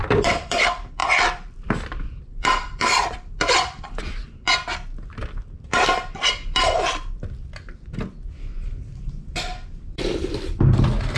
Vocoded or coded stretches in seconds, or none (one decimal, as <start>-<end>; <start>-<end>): 0.0-4.2; 5.4-11.2